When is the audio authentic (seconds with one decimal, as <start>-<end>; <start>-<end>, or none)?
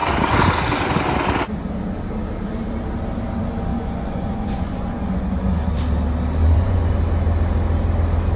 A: 0.0-3.7; 5.8-6.4; 7.0-8.4